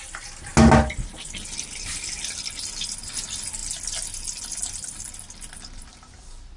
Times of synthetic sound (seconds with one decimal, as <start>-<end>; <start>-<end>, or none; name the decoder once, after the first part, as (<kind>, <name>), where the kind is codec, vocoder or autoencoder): none